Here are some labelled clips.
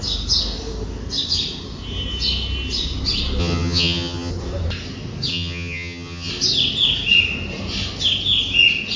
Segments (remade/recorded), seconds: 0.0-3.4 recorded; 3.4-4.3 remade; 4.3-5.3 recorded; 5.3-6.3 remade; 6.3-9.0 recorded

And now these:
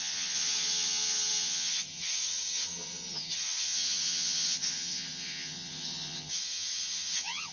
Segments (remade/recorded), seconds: 0.0-7.5 remade

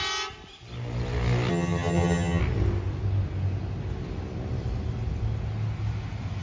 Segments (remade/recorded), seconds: 0.0-1.5 recorded; 1.5-2.4 remade; 2.4-6.4 recorded

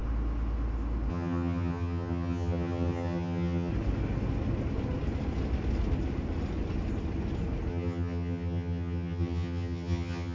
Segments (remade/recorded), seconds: 0.0-1.1 recorded; 1.1-3.7 remade; 3.7-7.7 recorded; 7.7-10.3 remade

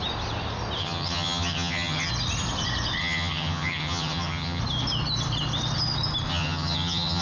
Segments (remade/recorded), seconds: 0.0-0.8 recorded; 0.8-2.1 remade; 2.1-3.0 recorded; 3.0-4.6 remade; 4.6-6.3 recorded; 6.3-7.2 remade

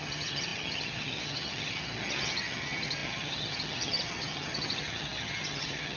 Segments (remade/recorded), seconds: 0.0-6.0 remade